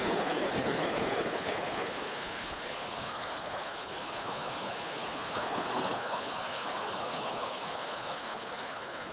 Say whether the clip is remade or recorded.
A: remade